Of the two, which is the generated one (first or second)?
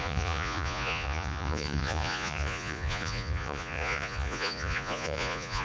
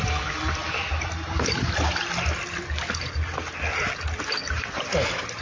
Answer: first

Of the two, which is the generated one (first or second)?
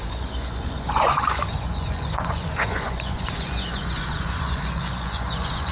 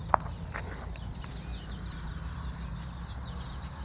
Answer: first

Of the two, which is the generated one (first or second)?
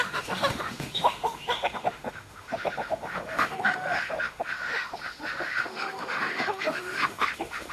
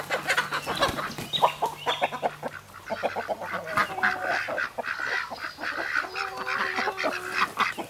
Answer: first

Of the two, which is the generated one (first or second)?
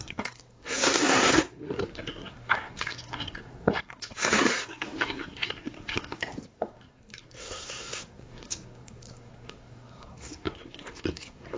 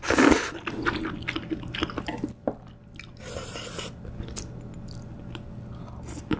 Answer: first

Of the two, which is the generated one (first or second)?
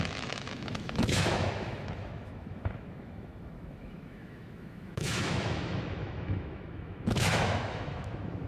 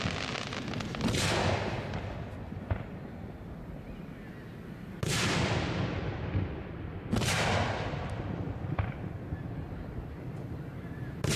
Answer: first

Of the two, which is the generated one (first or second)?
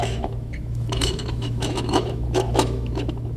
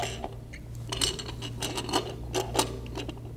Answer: first